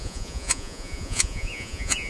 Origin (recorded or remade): remade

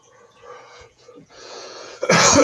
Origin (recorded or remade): remade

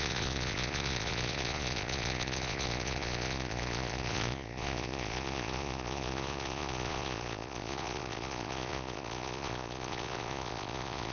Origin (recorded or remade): remade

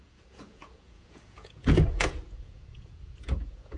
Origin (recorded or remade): remade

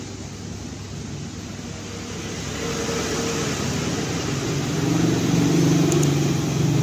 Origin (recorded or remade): recorded